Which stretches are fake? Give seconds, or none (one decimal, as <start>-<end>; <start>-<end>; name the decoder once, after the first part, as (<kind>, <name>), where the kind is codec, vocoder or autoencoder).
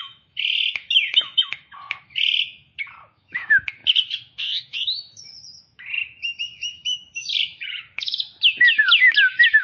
0.0-9.6 (autoencoder, DAC-VAE)